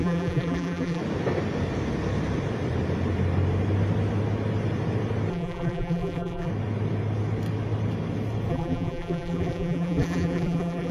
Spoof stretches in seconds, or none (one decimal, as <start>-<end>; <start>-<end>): 0.0-1.0; 5.3-6.5; 8.5-10.9